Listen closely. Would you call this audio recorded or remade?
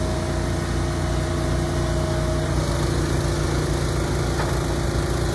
recorded